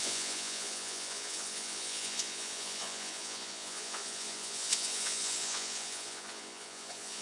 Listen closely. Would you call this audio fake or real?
fake